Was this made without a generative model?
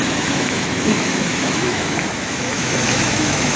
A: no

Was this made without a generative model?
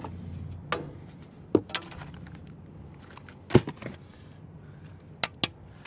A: yes